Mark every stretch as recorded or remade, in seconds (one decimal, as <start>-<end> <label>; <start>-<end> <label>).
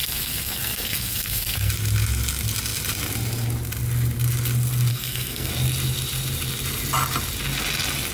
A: 0.0-1.7 remade; 1.7-4.9 recorded; 4.9-5.5 remade; 5.5-8.1 recorded